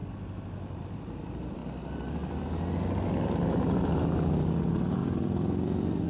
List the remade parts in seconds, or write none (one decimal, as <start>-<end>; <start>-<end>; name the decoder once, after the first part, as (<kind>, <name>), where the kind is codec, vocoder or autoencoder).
0.8-1.6 (vocoder, BigVGAN v2); 3.1-5.0